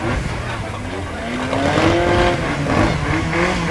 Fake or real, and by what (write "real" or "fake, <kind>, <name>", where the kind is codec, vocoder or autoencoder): real